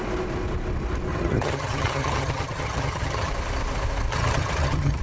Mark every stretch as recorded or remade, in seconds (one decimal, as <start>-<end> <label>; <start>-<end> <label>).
0.0-1.1 recorded; 1.1-3.3 remade; 3.3-4.1 recorded; 4.1-5.0 remade